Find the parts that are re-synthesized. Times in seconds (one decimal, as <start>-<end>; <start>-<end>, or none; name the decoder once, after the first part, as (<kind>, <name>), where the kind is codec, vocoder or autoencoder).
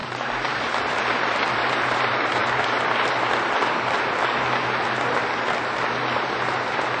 none